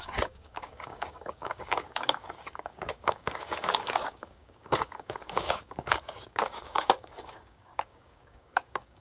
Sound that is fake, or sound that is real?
fake